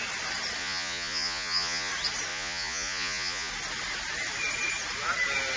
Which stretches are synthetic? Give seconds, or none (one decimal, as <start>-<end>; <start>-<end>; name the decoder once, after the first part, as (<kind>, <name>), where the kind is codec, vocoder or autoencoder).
0.6-1.9 (vocoder, Vocos); 2.3-3.5